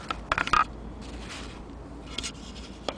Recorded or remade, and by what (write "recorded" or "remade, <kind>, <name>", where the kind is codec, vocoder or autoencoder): recorded